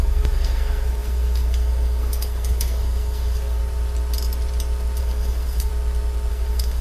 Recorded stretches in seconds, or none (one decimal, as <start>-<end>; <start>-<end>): 3.6-5.0; 5.7-6.3